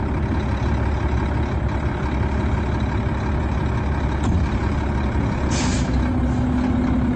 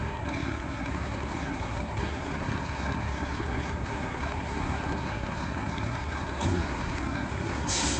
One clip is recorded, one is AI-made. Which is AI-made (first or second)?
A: second